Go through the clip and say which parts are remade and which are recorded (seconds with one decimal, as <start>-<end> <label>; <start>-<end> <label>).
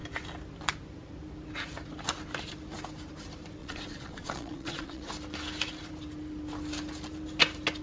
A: 0.0-3.6 recorded; 3.6-5.1 remade; 5.1-7.8 recorded